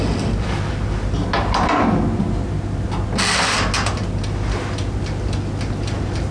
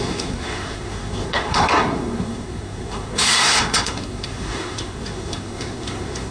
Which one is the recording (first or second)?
first